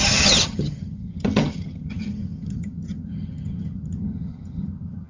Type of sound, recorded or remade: remade